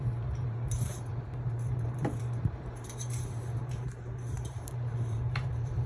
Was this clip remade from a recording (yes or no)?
yes